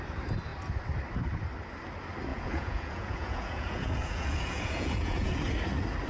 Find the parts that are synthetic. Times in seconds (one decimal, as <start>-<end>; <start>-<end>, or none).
2.3-5.4